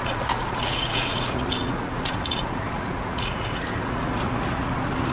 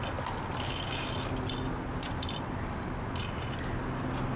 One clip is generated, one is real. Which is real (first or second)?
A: second